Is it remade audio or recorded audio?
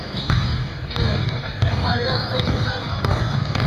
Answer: remade